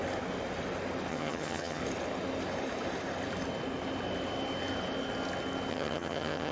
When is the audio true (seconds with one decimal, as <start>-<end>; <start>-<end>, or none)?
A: 0.0-1.1; 1.8-5.7